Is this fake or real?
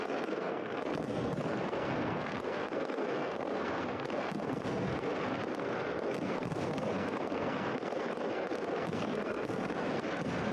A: fake